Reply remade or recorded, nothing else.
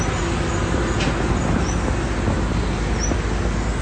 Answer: recorded